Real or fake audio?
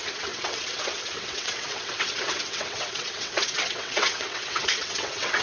fake